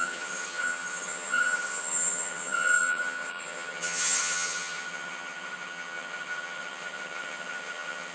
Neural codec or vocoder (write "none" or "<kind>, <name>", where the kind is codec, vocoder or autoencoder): vocoder, HiFi-GAN